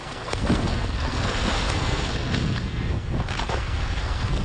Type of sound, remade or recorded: remade